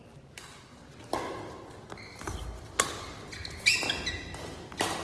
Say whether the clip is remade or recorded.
recorded